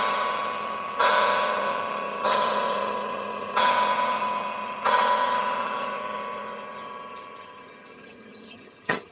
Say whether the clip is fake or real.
fake